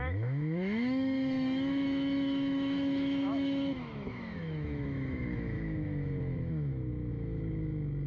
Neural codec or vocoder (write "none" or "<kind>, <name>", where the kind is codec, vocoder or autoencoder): autoencoder, DAC-VAE